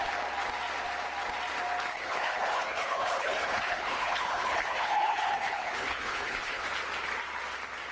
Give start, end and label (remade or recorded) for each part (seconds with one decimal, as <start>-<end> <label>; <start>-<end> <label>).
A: 0.0-1.9 recorded; 1.9-6.6 remade; 6.6-7.9 recorded